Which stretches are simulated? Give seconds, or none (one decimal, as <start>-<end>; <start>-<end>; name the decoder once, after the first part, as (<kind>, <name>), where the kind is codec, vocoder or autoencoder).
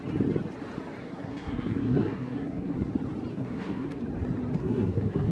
1.0-2.9 (codec, SNAC); 3.3-4.0; 4.6-5.3